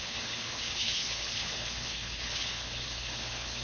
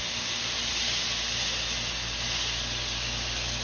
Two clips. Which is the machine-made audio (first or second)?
first